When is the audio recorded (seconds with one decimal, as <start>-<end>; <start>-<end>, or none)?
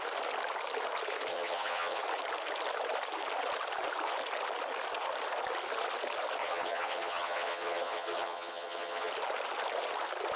0.0-1.3; 2.0-6.4; 9.1-10.4